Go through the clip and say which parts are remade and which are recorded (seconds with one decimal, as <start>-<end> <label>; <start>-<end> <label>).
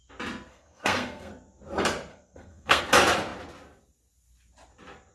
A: 0.0-0.5 recorded; 0.5-1.3 remade; 1.3-2.1 recorded; 2.1-2.8 remade; 2.8-5.1 recorded